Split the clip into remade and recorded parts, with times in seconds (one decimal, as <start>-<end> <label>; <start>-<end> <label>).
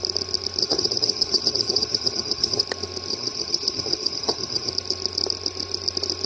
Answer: 0.0-0.6 recorded; 0.6-2.6 remade; 2.6-3.1 recorded; 3.1-4.7 remade; 4.7-6.3 recorded